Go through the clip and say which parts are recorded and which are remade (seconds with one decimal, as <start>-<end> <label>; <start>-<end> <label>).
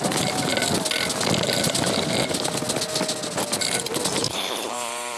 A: 0.0-4.1 recorded; 4.1-5.2 remade